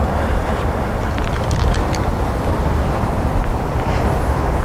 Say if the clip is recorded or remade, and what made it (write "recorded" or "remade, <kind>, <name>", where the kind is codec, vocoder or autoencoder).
remade, vocoder, BigVGAN v2